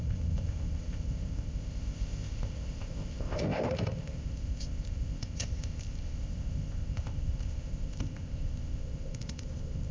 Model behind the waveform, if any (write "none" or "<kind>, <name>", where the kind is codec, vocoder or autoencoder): codec, ZipCodec